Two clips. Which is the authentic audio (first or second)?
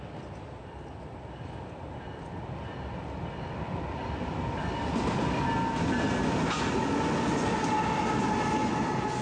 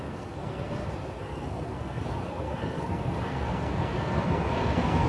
first